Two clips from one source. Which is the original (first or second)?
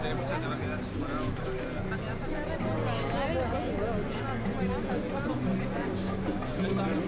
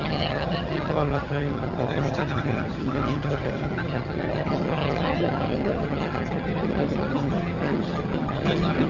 first